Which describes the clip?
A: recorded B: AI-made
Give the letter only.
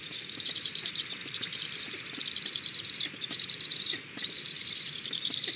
B